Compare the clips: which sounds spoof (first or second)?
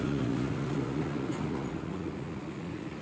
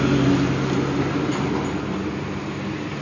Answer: first